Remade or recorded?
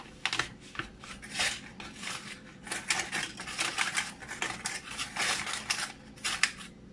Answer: recorded